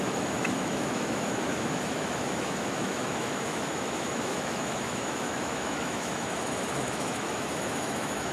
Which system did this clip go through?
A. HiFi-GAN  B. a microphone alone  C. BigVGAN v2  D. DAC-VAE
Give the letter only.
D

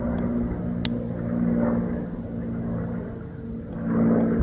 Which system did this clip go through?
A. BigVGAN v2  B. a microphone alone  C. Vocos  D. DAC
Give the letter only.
B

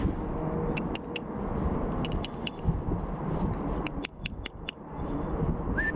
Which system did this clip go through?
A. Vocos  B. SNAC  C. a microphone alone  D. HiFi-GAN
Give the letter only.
C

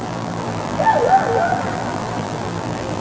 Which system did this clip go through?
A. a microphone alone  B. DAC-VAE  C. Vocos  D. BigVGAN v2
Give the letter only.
D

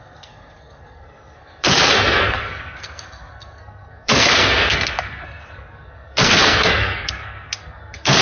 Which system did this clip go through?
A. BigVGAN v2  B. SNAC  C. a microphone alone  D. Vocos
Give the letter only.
B